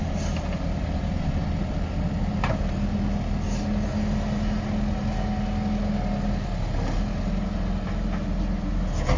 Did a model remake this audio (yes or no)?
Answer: no